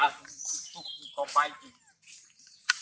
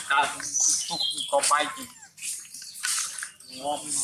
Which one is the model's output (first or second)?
first